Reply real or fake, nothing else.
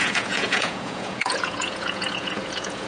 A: fake